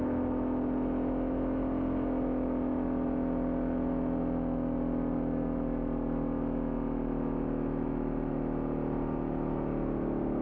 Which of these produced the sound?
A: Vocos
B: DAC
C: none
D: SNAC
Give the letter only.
C